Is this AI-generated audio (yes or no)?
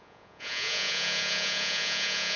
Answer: yes